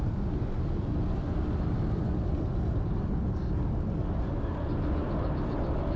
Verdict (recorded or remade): recorded